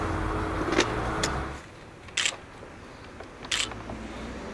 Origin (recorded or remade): recorded